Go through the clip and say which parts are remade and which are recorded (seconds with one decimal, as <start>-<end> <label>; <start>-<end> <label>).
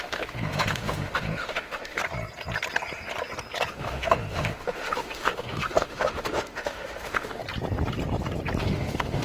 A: 0.0-2.0 remade; 2.0-3.7 recorded; 3.7-7.4 remade; 7.4-8.6 recorded; 8.6-9.2 remade